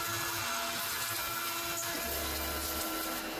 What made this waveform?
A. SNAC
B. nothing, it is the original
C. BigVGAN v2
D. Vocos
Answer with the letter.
B